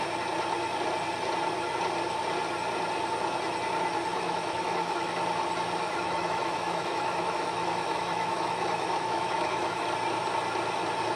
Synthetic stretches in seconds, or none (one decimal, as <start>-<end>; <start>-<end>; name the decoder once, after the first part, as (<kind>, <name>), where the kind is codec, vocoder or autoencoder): 4.1-5.2 (autoencoder, DAC-VAE); 5.8-9.8